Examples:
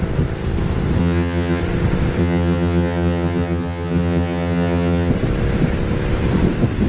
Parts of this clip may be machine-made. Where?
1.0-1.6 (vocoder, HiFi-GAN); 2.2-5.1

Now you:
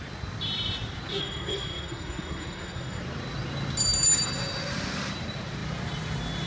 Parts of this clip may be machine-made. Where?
1.2-3.0 (codec, SNAC)

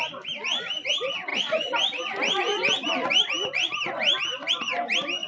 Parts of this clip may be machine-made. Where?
none

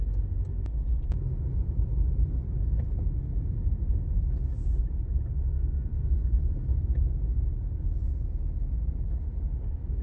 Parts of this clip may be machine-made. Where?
none

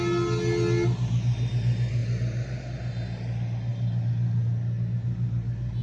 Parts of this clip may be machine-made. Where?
none